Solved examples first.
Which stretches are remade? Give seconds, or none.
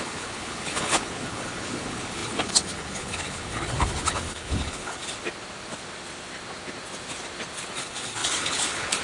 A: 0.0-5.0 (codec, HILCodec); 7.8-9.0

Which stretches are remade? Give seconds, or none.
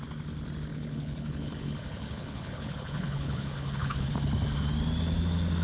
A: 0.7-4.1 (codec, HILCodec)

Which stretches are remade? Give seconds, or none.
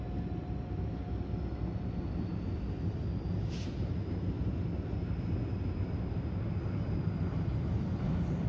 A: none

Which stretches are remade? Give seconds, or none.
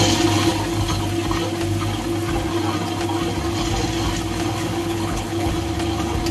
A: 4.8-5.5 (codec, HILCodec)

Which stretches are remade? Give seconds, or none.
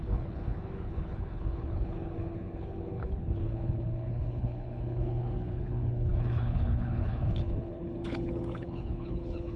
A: 0.0-9.6 (codec, HILCodec)